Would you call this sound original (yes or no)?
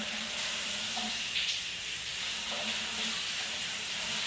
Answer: no